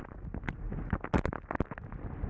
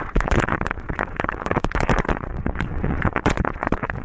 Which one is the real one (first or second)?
first